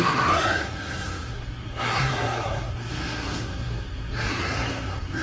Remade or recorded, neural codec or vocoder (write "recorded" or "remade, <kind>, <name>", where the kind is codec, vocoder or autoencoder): remade, codec, SNAC